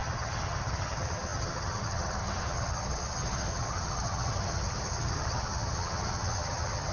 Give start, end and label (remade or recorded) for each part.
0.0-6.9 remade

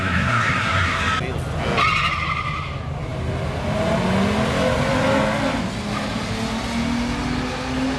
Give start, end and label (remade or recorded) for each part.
0.0-1.0 remade; 1.0-8.0 recorded

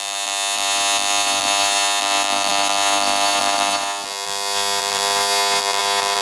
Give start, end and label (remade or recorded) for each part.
0.0-6.2 recorded

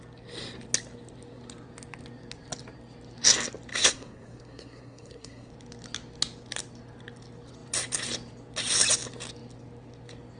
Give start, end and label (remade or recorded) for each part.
0.0-3.7 recorded; 3.7-5.5 remade; 5.5-10.4 recorded